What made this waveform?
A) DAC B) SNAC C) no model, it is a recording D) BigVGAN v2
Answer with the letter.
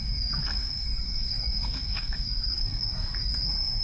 A